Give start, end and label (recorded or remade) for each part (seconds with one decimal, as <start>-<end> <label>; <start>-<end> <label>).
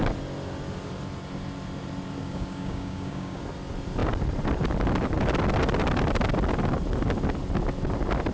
0.0-2.2 recorded; 2.2-3.4 remade; 3.4-8.3 recorded